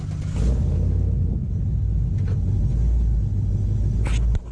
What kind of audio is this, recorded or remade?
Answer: recorded